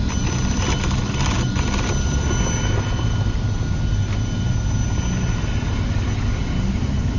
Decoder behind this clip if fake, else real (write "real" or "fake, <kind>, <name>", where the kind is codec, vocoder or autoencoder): real